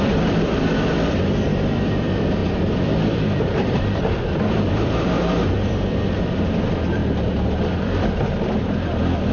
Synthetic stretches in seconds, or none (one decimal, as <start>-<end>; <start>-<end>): 0.0-7.0; 7.6-9.3